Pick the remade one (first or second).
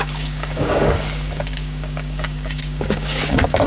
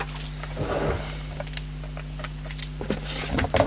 first